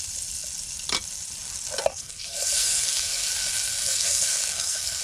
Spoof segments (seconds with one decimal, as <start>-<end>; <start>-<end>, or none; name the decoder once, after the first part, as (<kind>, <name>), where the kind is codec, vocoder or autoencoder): 1.9-3.3 (codec, SNAC); 3.8-5.0

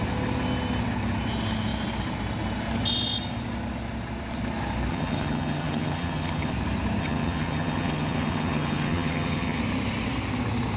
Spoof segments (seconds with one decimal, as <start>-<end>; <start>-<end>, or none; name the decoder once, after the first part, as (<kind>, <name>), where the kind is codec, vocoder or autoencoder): 4.9-6.5 (vocoder, HiFi-GAN); 7.0-9.6